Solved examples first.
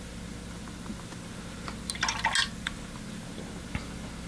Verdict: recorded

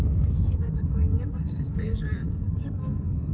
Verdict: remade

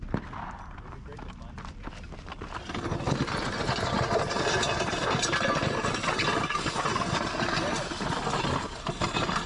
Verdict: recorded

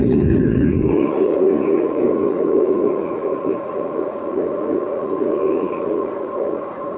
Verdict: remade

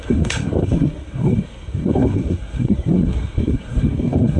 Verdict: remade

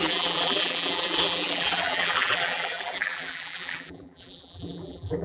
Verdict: remade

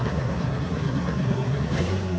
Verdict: remade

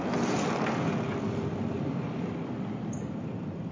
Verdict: recorded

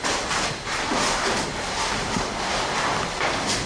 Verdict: remade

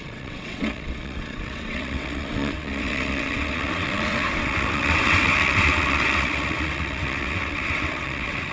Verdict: remade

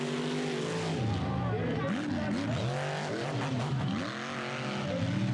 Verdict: recorded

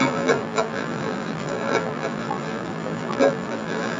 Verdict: remade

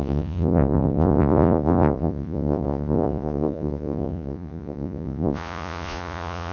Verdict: remade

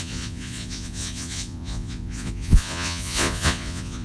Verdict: remade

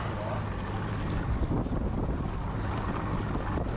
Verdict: recorded